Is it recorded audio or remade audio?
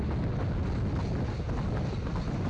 recorded